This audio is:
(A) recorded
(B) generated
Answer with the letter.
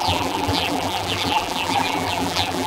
B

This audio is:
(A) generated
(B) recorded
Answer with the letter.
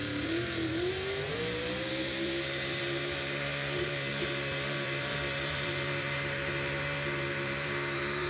A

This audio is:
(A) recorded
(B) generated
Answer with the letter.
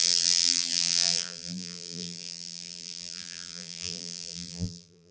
B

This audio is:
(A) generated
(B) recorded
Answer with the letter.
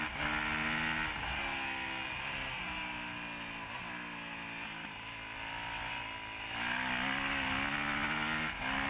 B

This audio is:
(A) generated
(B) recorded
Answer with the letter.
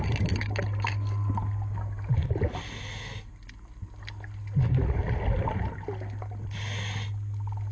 B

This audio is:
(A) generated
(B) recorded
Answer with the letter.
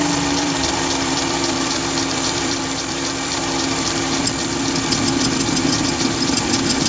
A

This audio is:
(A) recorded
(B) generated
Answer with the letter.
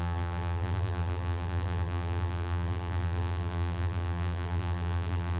B